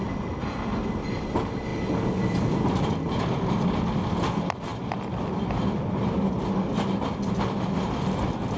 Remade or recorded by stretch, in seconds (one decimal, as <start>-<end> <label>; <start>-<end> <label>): 0.0-8.6 recorded